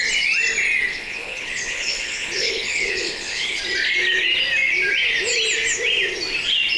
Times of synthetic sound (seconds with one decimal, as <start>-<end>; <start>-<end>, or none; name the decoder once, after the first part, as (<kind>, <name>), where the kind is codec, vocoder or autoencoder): 0.9-3.6 (codec, HILCodec)

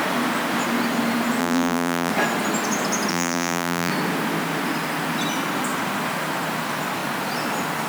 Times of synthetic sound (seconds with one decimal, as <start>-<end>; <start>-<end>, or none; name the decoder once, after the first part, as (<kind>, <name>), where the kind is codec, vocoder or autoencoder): 1.4-2.1 (vocoder, BigVGAN v2); 3.1-3.9

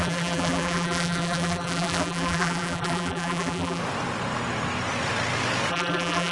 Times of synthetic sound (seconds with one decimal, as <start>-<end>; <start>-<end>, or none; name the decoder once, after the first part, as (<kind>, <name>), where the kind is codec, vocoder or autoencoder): 0.0-3.8 (vocoder, BigVGAN v2); 5.7-6.3

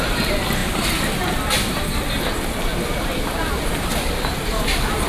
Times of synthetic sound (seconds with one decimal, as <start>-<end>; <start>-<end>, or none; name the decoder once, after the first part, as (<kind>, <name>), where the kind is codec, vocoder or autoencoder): none

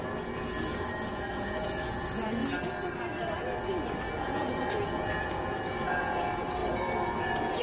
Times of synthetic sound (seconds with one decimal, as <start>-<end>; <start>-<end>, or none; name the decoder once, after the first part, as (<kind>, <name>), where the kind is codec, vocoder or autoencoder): 0.0-2.4 (vocoder, Vocos); 4.1-7.6